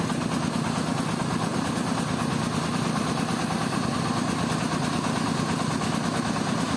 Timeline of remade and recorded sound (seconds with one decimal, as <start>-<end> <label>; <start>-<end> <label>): 0.0-6.8 recorded